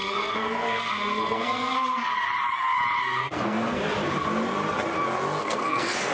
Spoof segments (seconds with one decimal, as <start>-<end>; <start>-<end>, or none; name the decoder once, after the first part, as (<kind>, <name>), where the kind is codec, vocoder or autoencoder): 0.0-2.1 (codec, SNAC); 3.2-3.8; 5.4-6.1